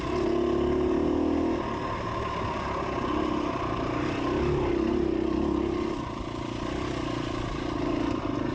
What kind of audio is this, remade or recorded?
recorded